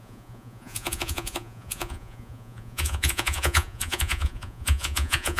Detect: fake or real fake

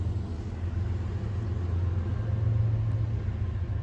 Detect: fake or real real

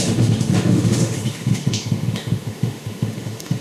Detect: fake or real fake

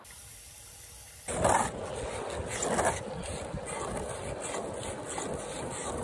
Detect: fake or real real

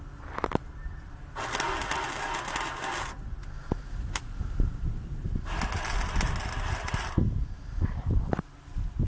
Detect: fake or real real